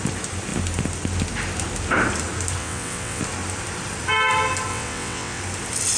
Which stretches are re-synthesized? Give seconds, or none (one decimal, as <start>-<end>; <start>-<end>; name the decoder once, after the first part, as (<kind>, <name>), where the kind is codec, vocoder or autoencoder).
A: 2.6-3.2 (vocoder, WaveNeXt); 4.7-5.4